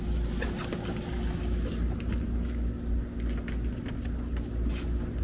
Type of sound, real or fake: real